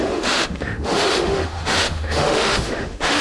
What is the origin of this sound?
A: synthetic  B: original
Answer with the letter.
A